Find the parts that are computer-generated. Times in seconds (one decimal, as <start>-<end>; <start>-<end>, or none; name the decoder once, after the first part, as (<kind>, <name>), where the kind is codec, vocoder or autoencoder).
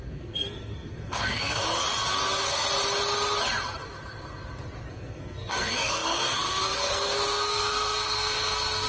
0.0-1.6 (codec, SNAC); 4.9-8.9